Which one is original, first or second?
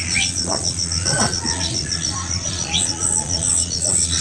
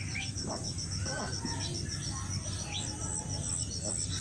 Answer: second